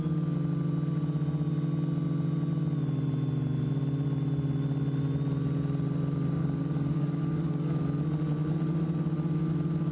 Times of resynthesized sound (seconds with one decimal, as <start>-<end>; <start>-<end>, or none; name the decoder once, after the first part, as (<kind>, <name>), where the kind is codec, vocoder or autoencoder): 6.4-7.8 (codec, DAC)